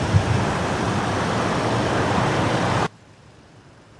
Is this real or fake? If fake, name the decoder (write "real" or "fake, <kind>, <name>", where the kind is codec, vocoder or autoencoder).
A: fake, vocoder, BigVGAN v2